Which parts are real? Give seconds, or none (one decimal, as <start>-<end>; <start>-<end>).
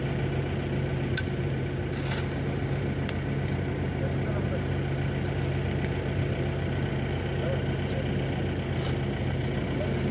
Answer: 0.0-0.9; 1.6-10.1